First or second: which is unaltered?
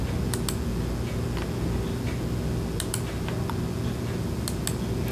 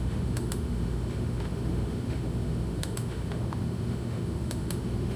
first